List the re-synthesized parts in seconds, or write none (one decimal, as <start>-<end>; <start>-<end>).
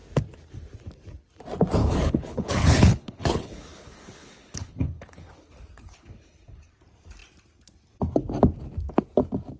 1.8-6.7